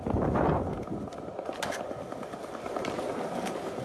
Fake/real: real